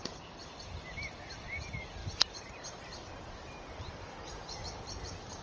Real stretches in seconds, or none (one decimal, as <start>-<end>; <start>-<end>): 0.0-2.0